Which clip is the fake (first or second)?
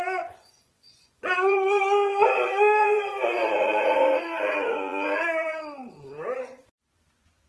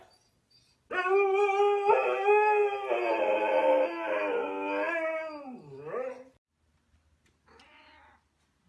first